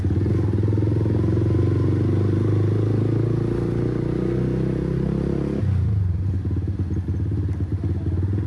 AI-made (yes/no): no